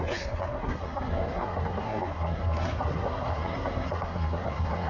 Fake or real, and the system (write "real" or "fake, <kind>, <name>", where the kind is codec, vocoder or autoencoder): fake, codec, SNAC